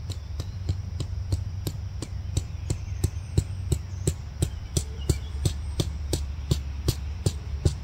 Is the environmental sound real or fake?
fake